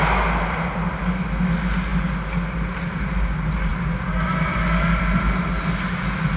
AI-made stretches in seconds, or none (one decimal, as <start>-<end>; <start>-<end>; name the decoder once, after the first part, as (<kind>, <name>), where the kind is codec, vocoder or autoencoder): none